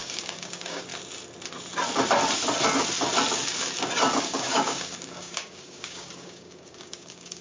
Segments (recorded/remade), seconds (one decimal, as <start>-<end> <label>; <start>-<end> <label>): 0.0-0.9 remade; 0.9-4.2 recorded; 4.2-7.4 remade